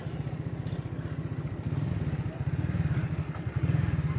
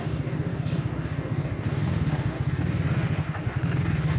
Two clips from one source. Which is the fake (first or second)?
second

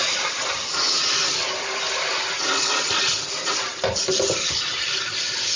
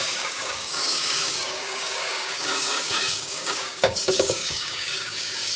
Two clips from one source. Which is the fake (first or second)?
second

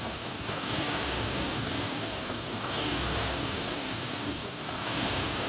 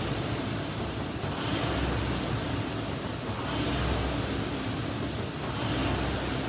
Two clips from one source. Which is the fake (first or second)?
first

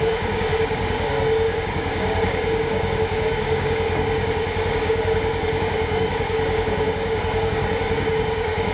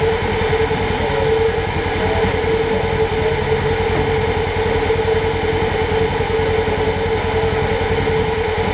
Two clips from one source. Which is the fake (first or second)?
first